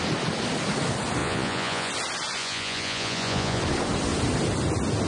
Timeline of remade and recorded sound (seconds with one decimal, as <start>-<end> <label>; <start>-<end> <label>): 0.0-1.2 recorded; 1.2-1.9 remade; 1.9-2.4 recorded; 2.4-3.6 remade; 3.6-5.1 recorded